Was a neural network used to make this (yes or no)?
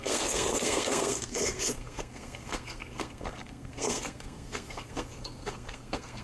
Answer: yes